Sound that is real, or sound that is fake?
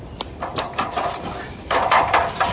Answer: fake